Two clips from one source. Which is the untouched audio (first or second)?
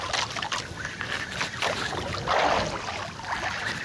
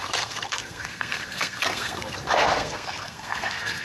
first